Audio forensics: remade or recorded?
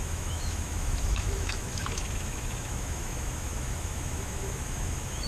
remade